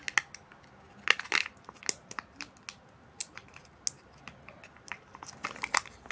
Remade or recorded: recorded